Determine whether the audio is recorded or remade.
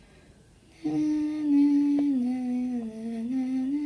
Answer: recorded